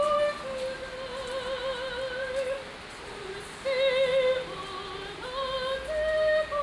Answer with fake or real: real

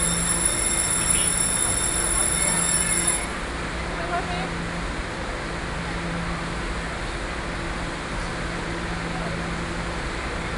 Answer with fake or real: real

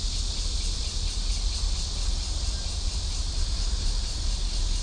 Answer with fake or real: real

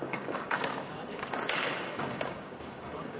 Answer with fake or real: fake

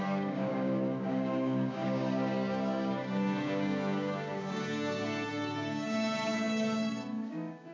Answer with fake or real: fake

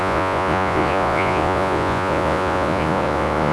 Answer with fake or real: fake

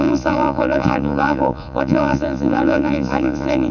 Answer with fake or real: fake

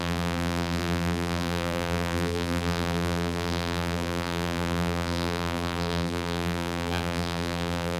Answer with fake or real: fake